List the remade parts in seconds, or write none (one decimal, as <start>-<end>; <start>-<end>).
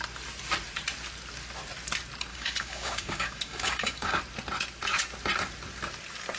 2.3-4.2